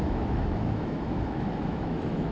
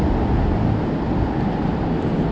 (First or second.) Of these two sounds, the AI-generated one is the first